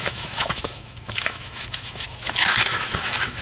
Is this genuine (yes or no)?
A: no